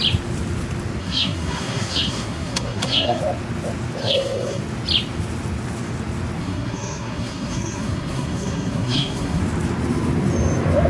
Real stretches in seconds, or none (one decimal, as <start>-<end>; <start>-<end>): 0.0-1.0; 3.2-4.0; 4.6-6.4; 9.4-10.9